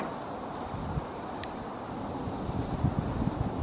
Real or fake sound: real